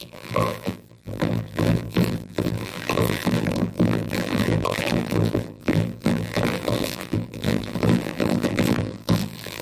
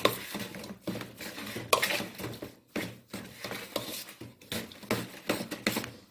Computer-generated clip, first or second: first